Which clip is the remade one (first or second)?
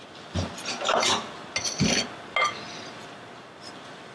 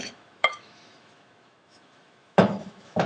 second